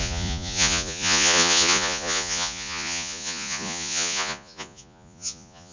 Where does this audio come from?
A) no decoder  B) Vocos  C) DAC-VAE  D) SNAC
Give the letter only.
B